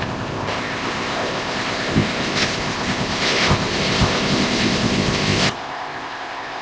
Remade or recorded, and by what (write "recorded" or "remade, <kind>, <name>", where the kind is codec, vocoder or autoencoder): remade, codec, ZipCodec